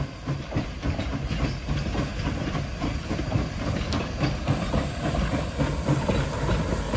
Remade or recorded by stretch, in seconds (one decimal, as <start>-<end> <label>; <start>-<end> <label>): 0.0-2.1 recorded; 2.1-6.2 remade; 6.2-7.0 recorded